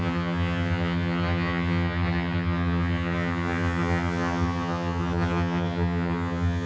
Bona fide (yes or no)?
no